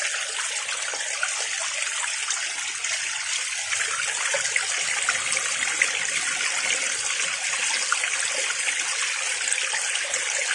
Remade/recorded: recorded